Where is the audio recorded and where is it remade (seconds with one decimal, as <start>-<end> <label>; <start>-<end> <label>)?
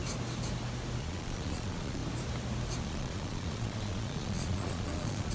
0.0-1.0 recorded; 1.0-2.0 remade; 2.0-2.8 recorded; 2.8-5.3 remade